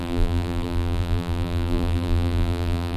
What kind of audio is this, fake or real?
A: fake